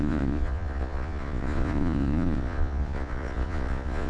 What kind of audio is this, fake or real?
fake